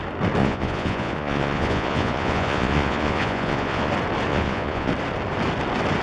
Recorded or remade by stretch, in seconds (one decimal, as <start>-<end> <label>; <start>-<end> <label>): 0.0-0.4 recorded; 0.4-3.9 remade; 3.9-4.3 recorded; 4.3-4.9 remade; 4.9-6.0 recorded